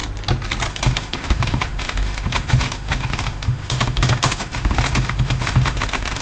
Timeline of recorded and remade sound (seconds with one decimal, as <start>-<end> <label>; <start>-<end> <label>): 0.0-0.7 recorded; 0.7-6.2 remade

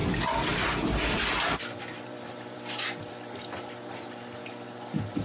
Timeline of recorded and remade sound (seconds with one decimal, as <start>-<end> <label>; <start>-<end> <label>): 0.0-3.1 remade; 3.1-5.2 recorded

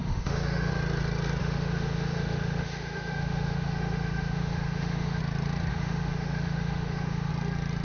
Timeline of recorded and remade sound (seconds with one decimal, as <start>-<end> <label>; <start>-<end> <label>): 0.0-0.7 remade; 0.7-1.4 recorded; 1.4-5.2 remade; 5.2-5.7 recorded; 5.7-7.3 remade; 7.3-7.8 recorded

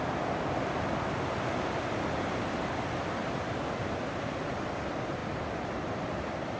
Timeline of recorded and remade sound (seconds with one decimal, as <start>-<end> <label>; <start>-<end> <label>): 0.0-3.2 remade; 3.2-4.2 recorded; 4.2-6.6 remade

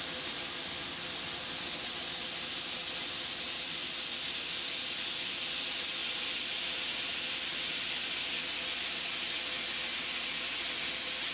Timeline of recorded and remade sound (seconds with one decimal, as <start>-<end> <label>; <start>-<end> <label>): 0.0-11.3 recorded